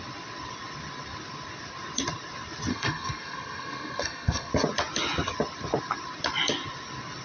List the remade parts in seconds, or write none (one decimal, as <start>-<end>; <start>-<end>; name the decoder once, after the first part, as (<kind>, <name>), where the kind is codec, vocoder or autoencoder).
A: 2.7-4.5 (codec, SNAC)